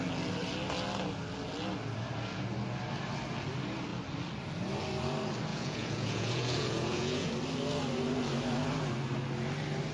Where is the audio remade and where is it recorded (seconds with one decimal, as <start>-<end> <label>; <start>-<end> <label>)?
0.0-5.5 recorded; 5.5-7.3 remade; 7.3-9.9 recorded